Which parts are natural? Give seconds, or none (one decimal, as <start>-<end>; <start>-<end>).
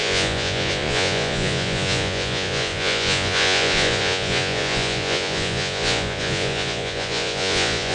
none